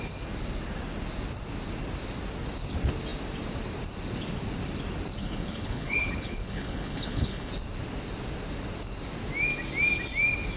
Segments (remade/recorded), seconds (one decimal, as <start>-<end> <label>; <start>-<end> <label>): 0.0-5.2 recorded; 5.2-7.5 remade; 7.5-10.6 recorded